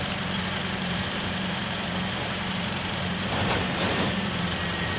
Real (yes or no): no